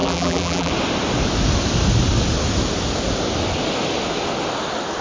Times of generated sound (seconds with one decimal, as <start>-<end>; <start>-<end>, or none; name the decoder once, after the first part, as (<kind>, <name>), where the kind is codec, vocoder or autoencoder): 0.0-0.7 (vocoder, BigVGAN v2)